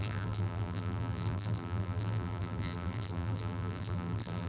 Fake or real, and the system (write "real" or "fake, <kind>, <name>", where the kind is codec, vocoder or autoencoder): fake, vocoder, BigVGAN v2